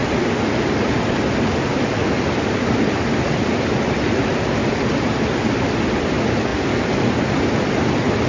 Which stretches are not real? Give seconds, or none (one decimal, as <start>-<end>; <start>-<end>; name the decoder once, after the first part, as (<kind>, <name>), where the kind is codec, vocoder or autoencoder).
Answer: none